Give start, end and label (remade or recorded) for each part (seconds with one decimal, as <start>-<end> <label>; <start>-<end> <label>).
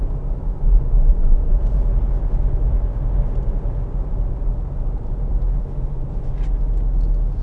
0.0-1.1 recorded; 1.1-2.0 remade; 2.0-7.4 recorded